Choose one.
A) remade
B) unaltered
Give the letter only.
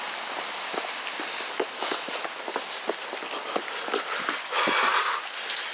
B